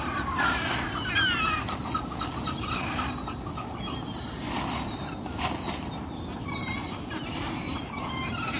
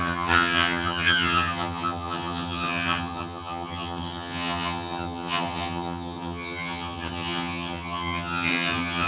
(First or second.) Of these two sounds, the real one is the first